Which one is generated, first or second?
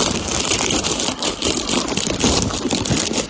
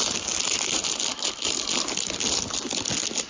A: first